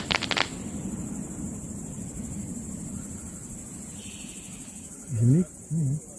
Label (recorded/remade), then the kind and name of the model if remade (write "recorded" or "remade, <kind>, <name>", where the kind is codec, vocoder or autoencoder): recorded